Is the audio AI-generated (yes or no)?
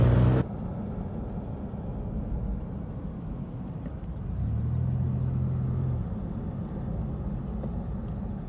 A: no